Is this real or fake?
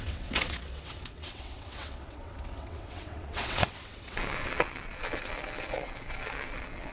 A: fake